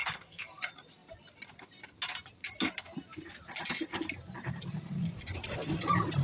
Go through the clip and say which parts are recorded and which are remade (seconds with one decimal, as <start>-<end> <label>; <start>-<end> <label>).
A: 0.0-0.6 remade; 0.6-6.2 recorded